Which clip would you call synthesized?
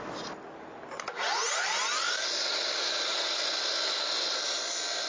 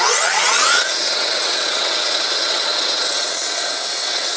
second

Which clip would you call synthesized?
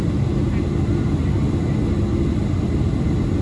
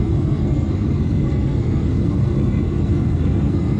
second